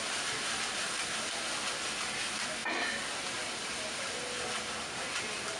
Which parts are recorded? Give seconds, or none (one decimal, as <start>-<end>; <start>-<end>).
0.0-5.6